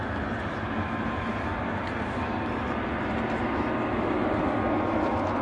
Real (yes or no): yes